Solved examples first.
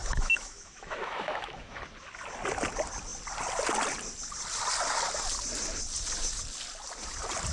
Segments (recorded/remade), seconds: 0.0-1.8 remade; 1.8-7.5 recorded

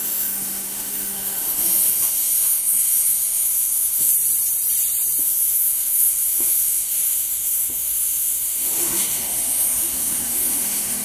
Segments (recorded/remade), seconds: 0.0-4.1 remade; 4.1-5.2 recorded; 5.2-11.0 remade

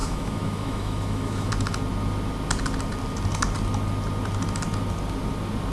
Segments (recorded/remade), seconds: 0.0-1.5 remade; 1.5-5.7 recorded

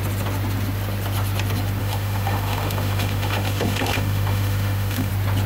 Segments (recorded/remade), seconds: 0.0-1.8 recorded; 1.8-5.1 remade; 5.1-5.5 recorded

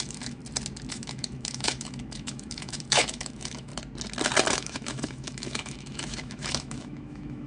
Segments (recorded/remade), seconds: 0.0-0.4 remade; 0.4-0.9 recorded; 0.9-3.7 remade; 3.7-4.5 recorded; 4.5-7.5 remade

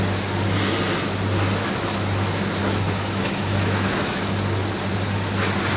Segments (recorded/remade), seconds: 0.0-2.6 recorded; 2.6-4.2 remade; 4.2-5.8 recorded